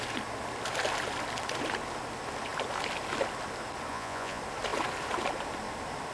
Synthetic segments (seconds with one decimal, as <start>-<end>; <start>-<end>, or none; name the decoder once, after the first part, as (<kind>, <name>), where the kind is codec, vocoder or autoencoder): 3.9-4.4 (vocoder, Vocos)